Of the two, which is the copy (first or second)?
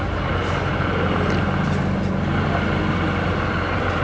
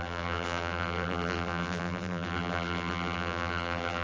second